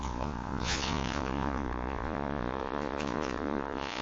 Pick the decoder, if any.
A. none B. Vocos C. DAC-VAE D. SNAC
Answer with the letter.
B